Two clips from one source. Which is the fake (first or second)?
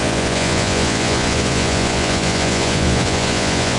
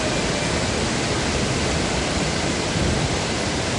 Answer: first